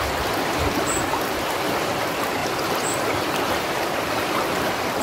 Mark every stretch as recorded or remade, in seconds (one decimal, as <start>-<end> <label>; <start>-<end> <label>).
0.0-5.0 recorded